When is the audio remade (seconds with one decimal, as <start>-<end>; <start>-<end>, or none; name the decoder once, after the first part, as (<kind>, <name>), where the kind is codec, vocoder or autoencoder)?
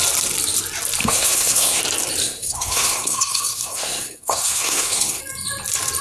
1.0-1.8 (codec, SNAC); 2.2-5.2